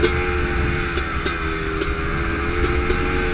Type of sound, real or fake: real